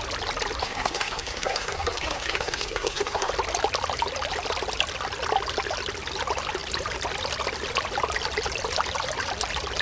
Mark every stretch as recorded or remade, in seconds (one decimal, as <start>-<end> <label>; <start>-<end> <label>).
0.0-0.6 recorded; 0.6-3.3 remade; 3.3-9.8 recorded